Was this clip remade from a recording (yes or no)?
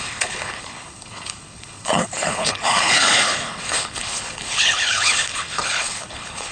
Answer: yes